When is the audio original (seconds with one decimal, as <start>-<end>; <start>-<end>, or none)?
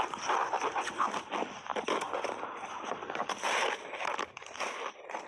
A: 0.0-5.3